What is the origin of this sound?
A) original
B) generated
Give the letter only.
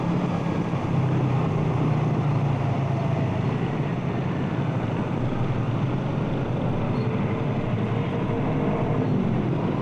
A